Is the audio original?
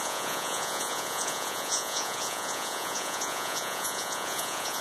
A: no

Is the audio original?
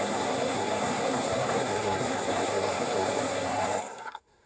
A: no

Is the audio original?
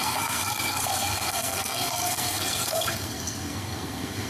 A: no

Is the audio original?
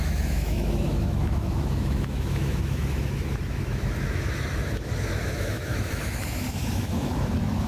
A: no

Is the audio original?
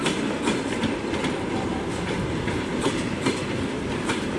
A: no